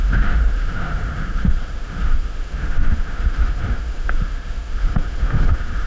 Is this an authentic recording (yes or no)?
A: no